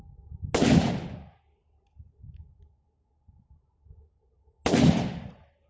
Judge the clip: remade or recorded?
recorded